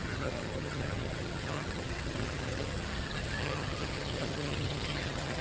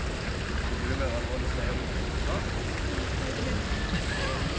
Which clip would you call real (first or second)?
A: second